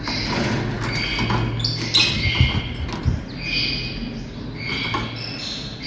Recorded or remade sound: recorded